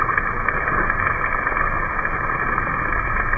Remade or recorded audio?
recorded